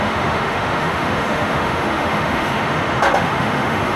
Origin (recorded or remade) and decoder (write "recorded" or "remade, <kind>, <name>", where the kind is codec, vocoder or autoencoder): remade, autoencoder, DAC-VAE